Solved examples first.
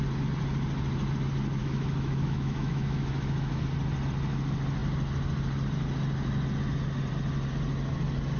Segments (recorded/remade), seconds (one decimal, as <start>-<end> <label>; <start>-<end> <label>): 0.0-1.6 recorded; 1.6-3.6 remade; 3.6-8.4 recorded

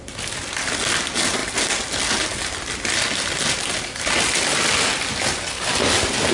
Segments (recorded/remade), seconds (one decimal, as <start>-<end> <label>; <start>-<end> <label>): 0.0-6.3 recorded

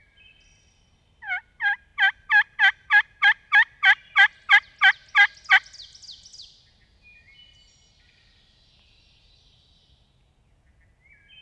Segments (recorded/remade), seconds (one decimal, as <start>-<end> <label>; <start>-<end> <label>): 0.0-11.4 recorded